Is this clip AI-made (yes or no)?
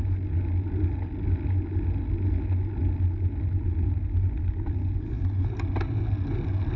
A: no